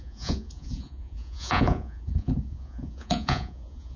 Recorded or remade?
remade